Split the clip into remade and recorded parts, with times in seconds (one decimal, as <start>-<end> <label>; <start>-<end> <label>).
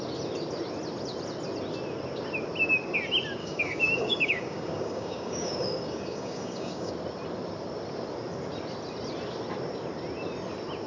0.0-3.4 recorded; 3.4-6.9 remade; 6.9-10.9 recorded